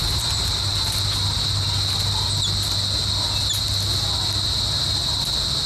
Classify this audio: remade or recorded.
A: recorded